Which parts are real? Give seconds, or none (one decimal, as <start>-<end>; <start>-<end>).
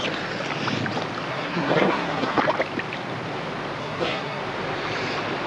0.0-1.3; 2.4-3.8; 4.4-5.5